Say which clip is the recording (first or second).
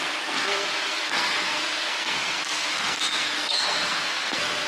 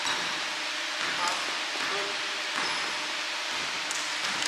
second